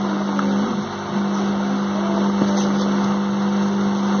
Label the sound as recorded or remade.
recorded